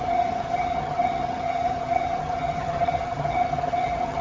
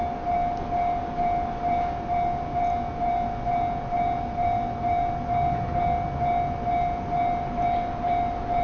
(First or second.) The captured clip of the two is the second